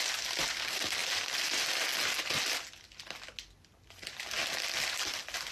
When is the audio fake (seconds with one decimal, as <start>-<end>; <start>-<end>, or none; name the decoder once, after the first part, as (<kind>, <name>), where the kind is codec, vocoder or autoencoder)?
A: 0.0-1.9 (vocoder, BigVGAN v2)